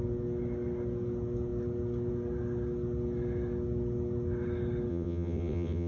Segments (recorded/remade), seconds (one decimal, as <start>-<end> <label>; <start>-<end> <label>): 0.0-4.9 recorded; 4.9-5.9 remade